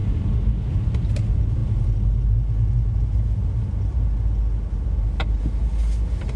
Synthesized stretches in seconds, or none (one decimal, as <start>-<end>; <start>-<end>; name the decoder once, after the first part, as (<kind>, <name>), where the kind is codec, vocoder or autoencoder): none